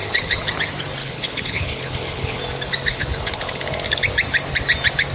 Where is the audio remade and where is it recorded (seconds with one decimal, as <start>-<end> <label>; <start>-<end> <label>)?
0.0-0.5 remade; 0.5-1.0 recorded; 1.0-2.4 remade; 2.4-2.9 recorded; 2.9-3.6 remade; 3.6-5.1 recorded